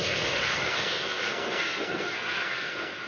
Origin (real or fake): fake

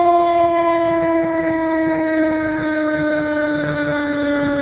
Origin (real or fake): fake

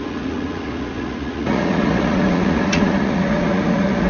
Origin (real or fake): fake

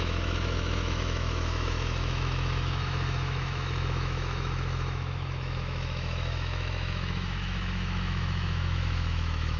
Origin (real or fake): fake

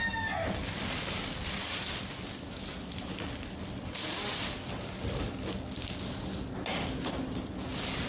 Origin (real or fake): real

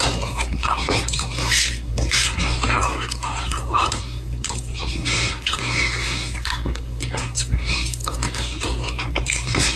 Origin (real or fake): fake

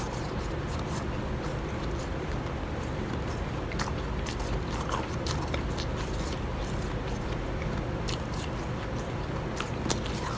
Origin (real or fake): real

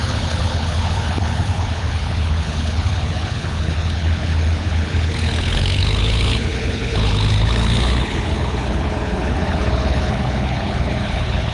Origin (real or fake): fake